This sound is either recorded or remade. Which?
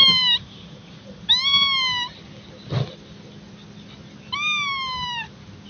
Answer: recorded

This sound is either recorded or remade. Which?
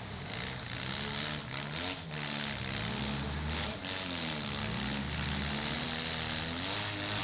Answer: recorded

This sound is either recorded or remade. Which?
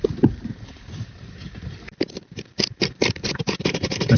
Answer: remade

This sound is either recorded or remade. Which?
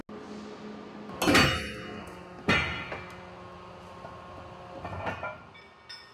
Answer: recorded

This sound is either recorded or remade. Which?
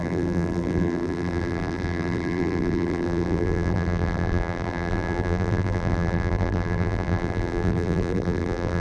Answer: remade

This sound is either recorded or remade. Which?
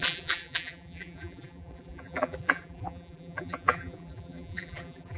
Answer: remade